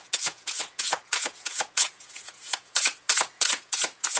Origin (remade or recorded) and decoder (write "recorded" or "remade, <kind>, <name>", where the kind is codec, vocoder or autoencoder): remade, vocoder, Vocos